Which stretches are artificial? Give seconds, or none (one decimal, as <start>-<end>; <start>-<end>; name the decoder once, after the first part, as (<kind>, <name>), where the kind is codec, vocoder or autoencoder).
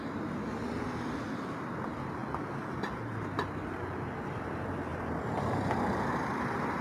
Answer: none